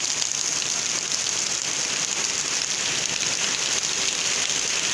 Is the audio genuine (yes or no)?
yes